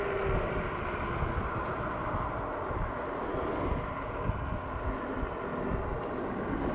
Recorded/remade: recorded